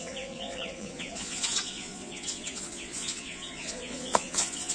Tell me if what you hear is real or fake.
fake